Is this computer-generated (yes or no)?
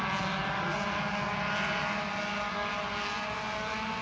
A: no